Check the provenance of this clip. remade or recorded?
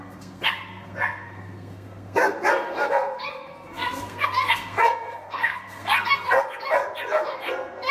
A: remade